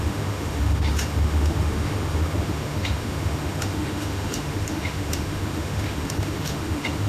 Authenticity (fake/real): fake